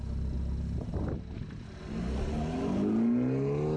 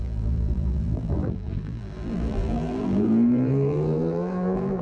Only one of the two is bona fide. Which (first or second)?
first